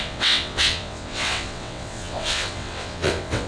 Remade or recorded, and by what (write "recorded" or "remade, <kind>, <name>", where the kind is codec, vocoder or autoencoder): remade, vocoder, WaveNeXt